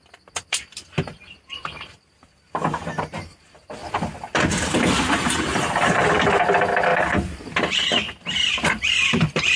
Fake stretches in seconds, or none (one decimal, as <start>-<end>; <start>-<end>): 6.9-7.7